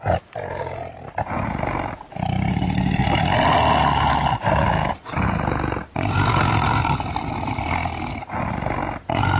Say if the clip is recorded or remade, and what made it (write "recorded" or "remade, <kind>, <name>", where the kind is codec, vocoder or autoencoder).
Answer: recorded